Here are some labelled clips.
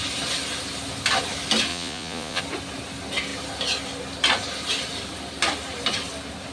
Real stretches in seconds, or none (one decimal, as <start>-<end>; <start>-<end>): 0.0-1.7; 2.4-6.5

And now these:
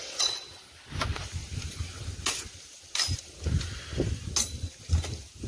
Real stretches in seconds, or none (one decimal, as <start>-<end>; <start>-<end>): 0.6-5.5

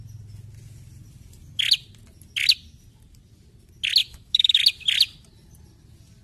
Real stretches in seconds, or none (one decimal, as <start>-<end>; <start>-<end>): 0.0-4.0; 4.6-6.2

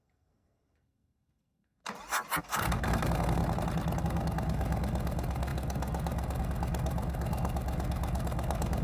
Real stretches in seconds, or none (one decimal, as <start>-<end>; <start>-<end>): 1.8-2.4; 3.4-4.0

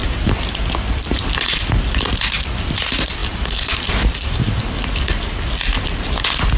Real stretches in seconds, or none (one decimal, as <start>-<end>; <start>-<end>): 1.2-3.2; 3.9-6.6

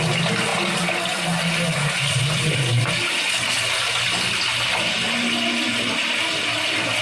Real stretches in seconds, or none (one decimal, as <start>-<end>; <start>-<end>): 0.0-7.0